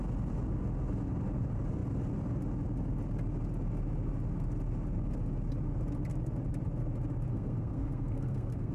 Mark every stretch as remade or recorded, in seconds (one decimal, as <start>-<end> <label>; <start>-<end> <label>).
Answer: 0.0-7.3 recorded; 7.3-8.7 remade